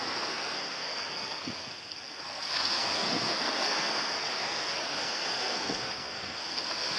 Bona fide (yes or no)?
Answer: no